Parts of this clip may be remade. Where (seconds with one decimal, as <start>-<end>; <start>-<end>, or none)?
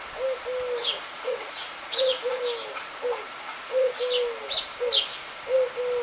0.8-2.4; 3.3-4.0